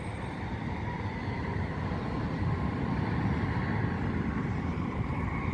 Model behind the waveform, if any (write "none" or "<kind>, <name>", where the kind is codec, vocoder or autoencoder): none